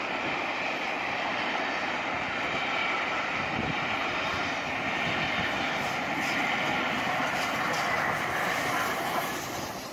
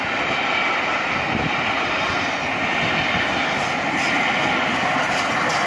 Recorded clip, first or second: second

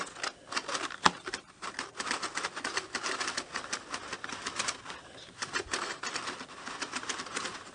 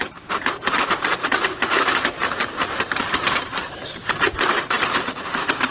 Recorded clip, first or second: first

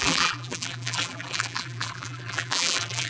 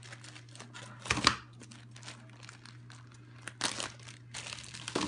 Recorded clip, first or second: second